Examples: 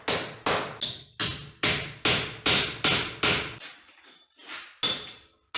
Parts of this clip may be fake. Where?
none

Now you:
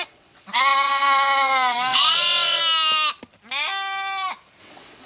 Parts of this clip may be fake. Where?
0.0-2.6 (vocoder, WaveNeXt); 4.6-5.1

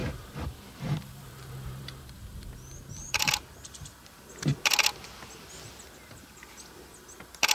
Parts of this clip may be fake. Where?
0.0-3.3 (vocoder, BigVGAN v2)

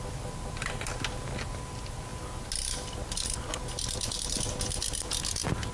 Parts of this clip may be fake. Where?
none

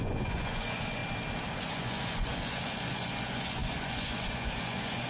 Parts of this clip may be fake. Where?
0.0-1.0 (vocoder, Vocos); 1.6-5.1